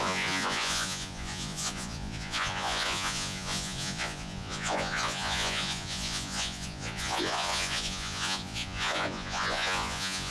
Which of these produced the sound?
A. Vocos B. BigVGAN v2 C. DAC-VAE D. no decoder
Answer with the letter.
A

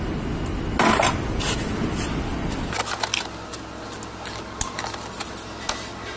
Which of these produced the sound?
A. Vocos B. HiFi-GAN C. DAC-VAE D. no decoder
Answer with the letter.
D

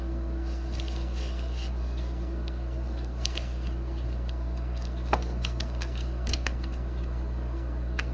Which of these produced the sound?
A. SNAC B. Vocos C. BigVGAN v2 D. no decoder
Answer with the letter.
A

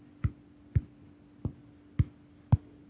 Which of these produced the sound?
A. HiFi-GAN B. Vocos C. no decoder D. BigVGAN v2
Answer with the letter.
C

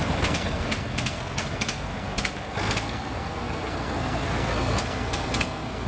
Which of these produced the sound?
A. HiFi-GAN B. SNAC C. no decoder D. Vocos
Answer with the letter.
B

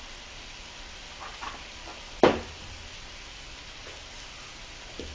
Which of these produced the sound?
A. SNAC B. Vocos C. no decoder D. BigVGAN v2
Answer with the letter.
C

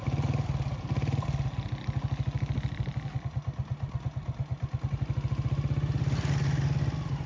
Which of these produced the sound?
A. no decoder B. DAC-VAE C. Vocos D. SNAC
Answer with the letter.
A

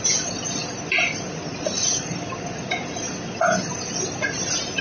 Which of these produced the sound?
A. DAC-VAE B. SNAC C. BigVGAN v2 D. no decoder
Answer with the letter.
D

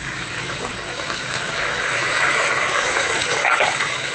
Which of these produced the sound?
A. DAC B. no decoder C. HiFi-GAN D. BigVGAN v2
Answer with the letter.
A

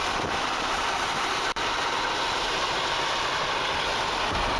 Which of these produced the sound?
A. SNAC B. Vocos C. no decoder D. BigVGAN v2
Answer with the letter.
C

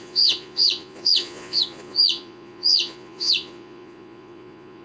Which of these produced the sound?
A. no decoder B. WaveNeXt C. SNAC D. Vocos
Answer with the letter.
D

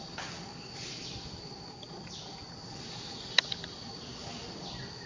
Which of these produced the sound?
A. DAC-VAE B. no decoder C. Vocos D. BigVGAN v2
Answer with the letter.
B